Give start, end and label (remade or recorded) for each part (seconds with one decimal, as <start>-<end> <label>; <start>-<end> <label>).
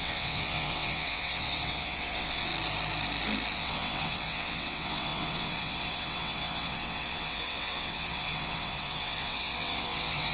0.0-2.5 remade; 2.5-3.5 recorded; 3.5-10.3 remade